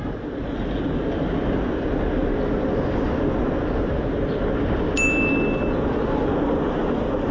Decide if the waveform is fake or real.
real